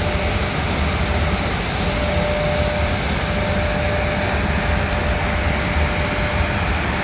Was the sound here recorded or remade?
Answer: recorded